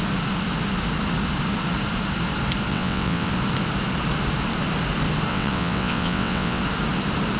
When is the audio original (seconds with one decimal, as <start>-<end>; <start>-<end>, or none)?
0.0-2.7; 3.3-5.3; 6.6-7.4

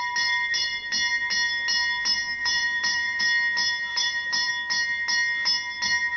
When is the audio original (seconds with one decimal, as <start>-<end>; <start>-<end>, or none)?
0.0-2.4; 3.2-3.9; 4.5-6.2

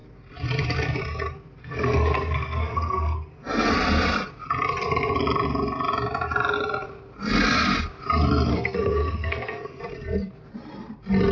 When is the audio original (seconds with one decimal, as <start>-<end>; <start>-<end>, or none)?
0.0-1.6; 3.7-8.5; 9.8-11.3

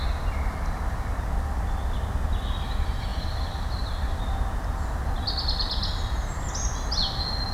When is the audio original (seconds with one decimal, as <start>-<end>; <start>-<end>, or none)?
0.0-7.5